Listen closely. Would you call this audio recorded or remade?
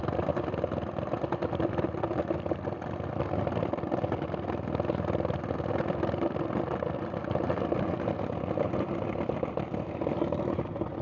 recorded